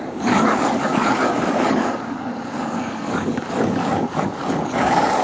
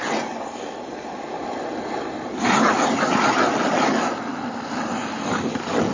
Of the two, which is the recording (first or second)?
second